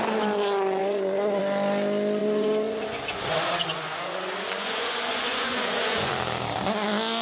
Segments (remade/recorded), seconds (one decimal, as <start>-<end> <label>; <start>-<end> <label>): 0.0-0.8 recorded; 0.8-1.4 remade; 1.4-2.2 recorded; 2.2-6.1 remade; 6.1-7.2 recorded